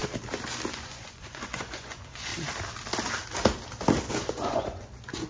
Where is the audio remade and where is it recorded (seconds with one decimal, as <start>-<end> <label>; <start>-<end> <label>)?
0.0-0.7 recorded; 0.7-2.3 remade; 2.3-4.1 recorded; 4.1-5.3 remade